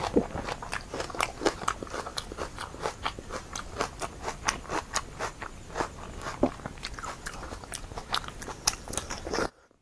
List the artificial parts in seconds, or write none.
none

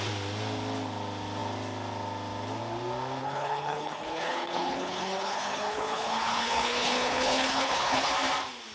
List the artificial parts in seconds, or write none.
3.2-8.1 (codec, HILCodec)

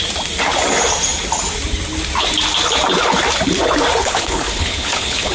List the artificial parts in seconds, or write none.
4.0-5.3 (codec, HILCodec)

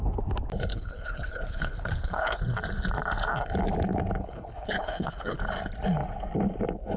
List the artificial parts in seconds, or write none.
0.7-2.4 (codec, HILCodec); 4.2-5.4